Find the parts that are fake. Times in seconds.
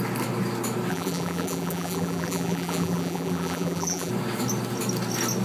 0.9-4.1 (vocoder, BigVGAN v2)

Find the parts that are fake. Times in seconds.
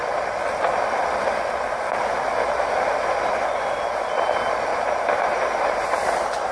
4.7-6.5 (vocoder, BigVGAN v2)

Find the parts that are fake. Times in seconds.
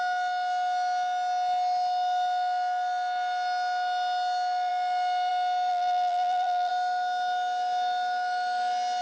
5.7-6.7 (vocoder, BigVGAN v2)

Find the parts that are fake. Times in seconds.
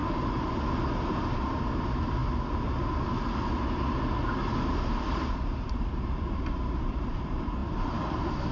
1.1-2.2 (vocoder, BigVGAN v2); 4.3-8.5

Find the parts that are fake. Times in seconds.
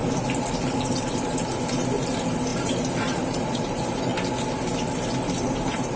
0.8-4.1 (vocoder, BigVGAN v2); 5.2-6.0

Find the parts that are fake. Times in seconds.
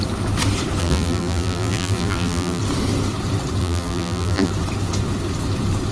0.8-2.6 (vocoder, BigVGAN v2); 3.6-4.5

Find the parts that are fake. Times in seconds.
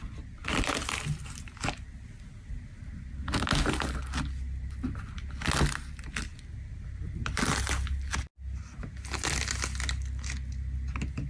0.4-3.1 (vocoder, BigVGAN v2); 6.3-8.1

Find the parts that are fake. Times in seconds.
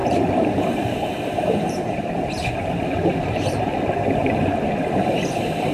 0.0-5.7 (vocoder, BigVGAN v2)